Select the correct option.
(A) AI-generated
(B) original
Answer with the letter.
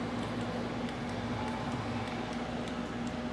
B